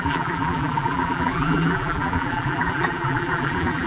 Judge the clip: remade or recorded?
remade